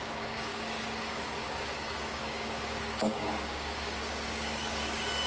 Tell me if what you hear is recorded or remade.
remade